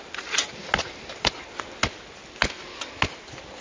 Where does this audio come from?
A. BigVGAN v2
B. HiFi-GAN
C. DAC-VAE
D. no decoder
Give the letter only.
D